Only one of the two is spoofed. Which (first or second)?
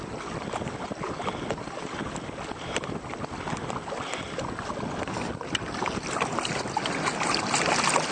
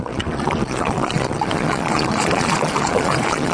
second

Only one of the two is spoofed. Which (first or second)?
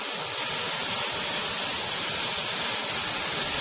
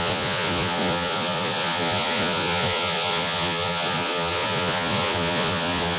second